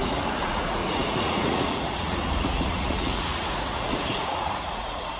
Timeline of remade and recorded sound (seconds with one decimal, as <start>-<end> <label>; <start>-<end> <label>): 0.0-5.2 remade